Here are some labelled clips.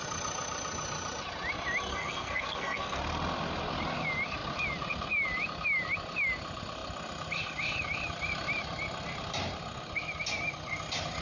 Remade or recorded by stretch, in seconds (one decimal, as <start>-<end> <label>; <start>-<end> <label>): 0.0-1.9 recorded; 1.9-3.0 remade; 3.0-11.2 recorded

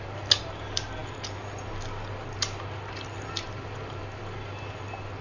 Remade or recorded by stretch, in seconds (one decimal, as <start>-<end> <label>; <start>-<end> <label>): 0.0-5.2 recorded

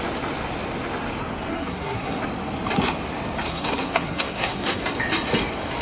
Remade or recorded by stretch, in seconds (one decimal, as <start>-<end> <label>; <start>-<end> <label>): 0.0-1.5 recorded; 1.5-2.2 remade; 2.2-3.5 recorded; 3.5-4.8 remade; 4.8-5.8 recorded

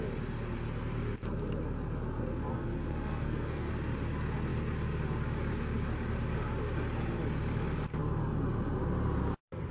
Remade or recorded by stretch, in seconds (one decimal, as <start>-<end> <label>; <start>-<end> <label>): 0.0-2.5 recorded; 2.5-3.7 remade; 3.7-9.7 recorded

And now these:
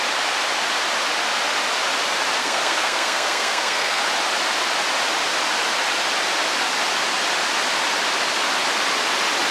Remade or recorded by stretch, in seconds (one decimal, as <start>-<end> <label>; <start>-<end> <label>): 0.0-2.4 recorded; 2.4-4.0 remade; 4.0-9.5 recorded

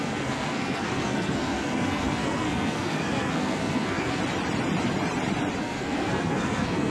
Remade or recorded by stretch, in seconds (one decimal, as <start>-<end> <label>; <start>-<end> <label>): 0.0-4.2 remade; 4.2-5.6 recorded; 5.6-6.9 remade